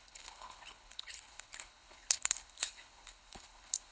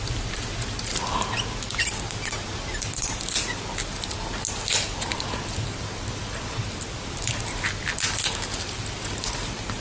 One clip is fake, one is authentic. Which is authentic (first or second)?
second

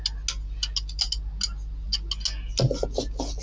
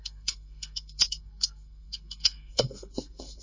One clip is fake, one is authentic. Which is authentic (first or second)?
first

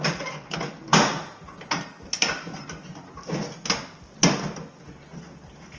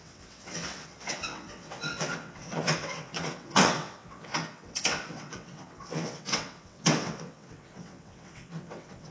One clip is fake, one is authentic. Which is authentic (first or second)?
first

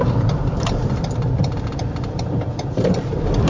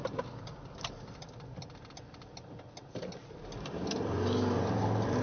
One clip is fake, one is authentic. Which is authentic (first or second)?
second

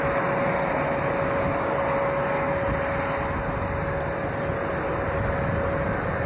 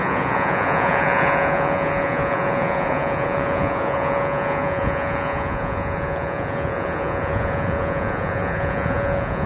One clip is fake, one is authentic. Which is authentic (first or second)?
first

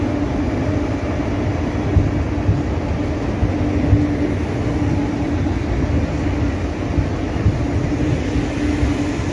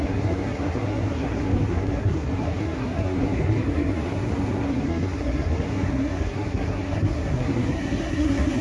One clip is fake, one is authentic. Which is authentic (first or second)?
first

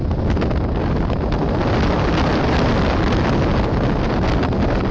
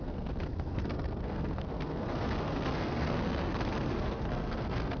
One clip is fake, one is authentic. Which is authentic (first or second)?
first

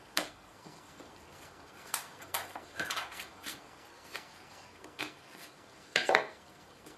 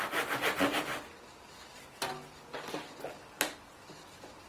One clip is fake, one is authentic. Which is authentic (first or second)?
second